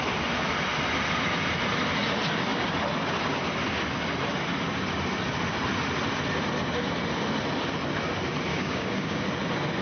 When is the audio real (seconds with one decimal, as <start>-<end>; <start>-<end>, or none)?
0.0-8.5; 9.2-9.8